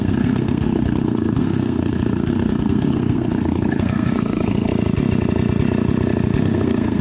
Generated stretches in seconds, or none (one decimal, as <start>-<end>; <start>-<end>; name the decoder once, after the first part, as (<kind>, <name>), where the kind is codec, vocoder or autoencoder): 0.0-4.7 (codec, SNAC); 6.4-7.0